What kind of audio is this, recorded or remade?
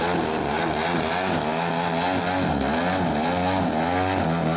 recorded